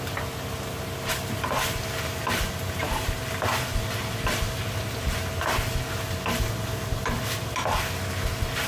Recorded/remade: recorded